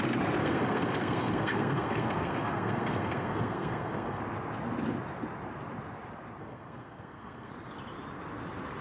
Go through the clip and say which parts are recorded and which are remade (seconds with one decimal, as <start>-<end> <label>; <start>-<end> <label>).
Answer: 0.0-0.4 recorded; 0.4-4.2 remade; 4.2-6.4 recorded; 6.4-7.5 remade; 7.5-8.8 recorded